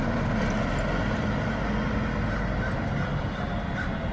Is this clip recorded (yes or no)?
yes